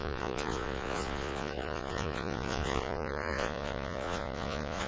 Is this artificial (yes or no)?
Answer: yes